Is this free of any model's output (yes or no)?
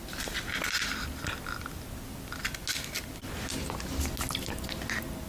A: yes